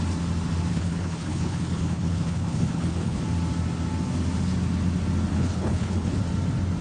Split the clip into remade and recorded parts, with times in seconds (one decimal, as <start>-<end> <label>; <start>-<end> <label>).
0.0-0.7 recorded; 0.7-3.2 remade; 3.2-5.3 recorded; 5.3-6.2 remade; 6.2-6.8 recorded